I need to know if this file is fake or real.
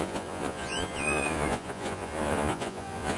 fake